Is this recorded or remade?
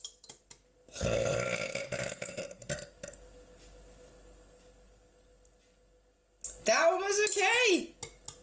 recorded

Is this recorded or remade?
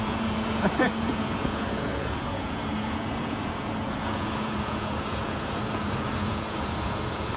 remade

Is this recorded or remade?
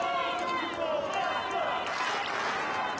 recorded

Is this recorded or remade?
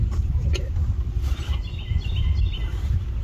recorded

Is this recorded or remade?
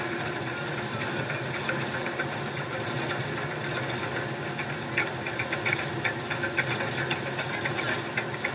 recorded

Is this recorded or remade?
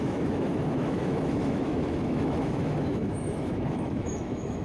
remade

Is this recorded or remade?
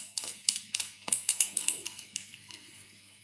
remade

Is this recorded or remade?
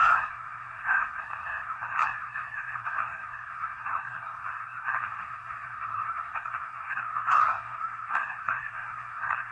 remade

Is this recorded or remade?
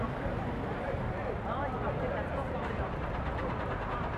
remade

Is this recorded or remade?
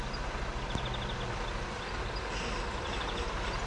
recorded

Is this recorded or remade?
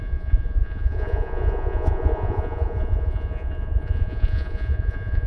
remade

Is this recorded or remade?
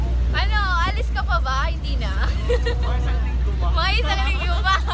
recorded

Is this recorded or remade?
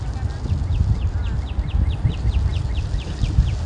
recorded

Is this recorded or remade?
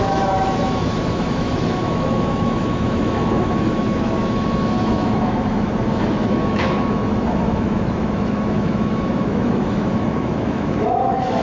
remade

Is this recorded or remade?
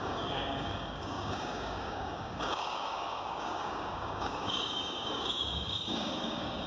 remade